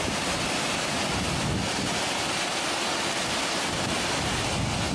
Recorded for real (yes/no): yes